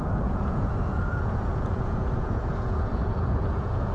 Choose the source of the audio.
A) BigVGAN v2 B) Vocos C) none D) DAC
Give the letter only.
B